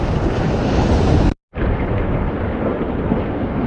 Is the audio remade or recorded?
recorded